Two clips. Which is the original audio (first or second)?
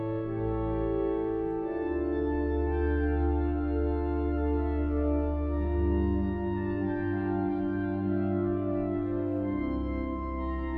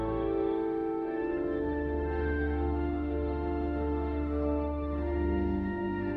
first